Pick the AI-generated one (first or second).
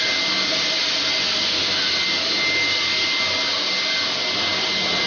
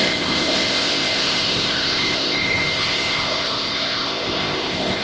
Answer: second